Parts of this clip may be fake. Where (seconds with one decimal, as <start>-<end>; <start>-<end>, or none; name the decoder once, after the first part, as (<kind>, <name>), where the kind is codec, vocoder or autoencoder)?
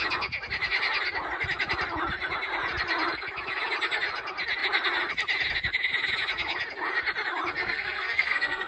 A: 7.6-8.7 (codec, SNAC)